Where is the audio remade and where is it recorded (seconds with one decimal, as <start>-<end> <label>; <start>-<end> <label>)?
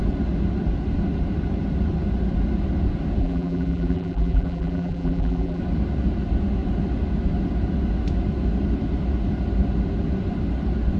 0.0-3.2 recorded; 3.2-5.6 remade; 5.6-11.0 recorded